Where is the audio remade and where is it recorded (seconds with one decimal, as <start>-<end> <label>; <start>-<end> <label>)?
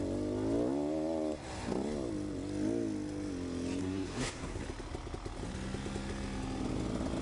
0.0-3.8 recorded; 3.8-4.6 remade; 4.6-7.2 recorded